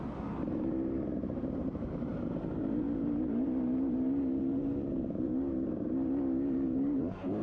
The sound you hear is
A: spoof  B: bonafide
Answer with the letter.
A